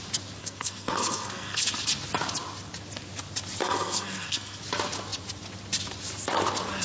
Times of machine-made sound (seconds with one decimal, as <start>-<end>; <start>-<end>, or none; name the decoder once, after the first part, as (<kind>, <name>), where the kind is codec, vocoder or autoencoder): 0.4-1.6 (codec, SNAC); 3.6-4.6